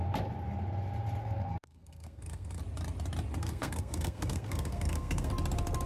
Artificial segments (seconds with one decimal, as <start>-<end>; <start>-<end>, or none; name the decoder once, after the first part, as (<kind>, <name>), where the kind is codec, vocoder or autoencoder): 1.2-2.6 (codec, SNAC); 3.4-5.3